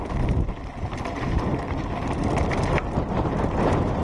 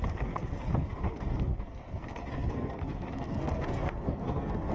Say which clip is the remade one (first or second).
second